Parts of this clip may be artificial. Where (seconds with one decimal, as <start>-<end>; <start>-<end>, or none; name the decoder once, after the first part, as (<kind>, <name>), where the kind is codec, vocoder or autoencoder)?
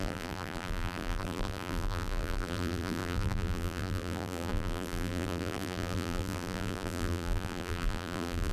0.0-8.5 (vocoder, BigVGAN v2)